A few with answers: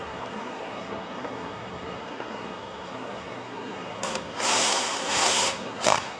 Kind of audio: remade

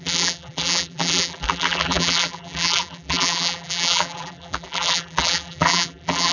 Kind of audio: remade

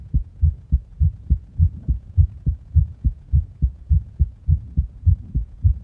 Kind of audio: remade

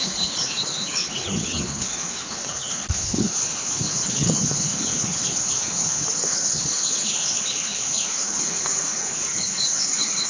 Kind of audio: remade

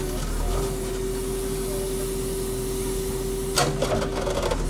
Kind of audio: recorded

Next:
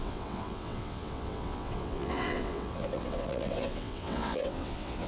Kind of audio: remade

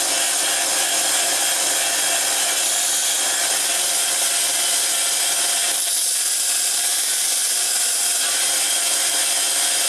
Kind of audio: recorded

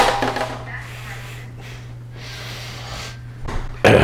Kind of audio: recorded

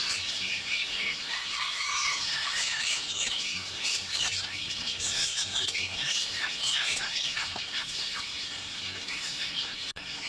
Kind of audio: remade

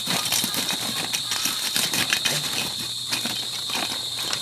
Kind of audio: remade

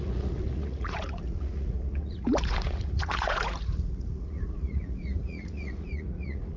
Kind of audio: remade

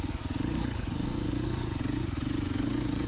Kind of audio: remade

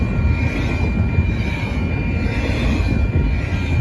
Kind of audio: recorded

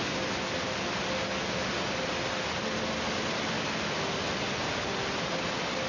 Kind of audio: recorded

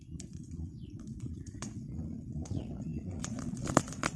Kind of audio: remade